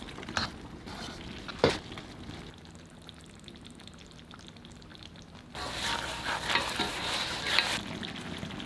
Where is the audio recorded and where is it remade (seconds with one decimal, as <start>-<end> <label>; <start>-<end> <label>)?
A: 0.0-8.7 recorded